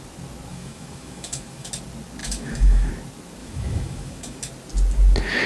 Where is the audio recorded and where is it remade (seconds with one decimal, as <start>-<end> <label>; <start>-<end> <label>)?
0.0-0.5 recorded; 0.5-1.7 remade; 1.7-2.2 recorded; 2.2-2.9 remade; 2.9-3.4 recorded; 3.4-4.4 remade; 4.4-5.5 recorded